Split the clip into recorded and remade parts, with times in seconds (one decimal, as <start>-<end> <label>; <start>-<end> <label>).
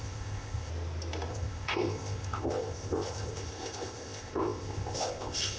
0.0-0.7 remade; 0.7-1.3 recorded; 1.3-5.6 remade